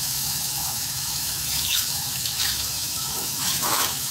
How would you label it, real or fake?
fake